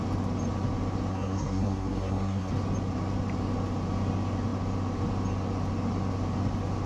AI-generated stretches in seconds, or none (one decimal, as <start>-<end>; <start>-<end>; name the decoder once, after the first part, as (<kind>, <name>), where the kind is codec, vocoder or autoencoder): 1.1-2.5 (codec, SNAC)